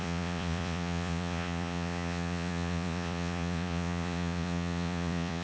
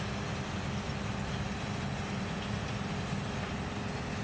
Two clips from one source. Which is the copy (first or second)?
first